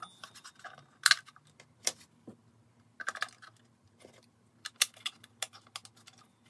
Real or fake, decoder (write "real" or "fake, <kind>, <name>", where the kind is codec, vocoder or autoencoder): real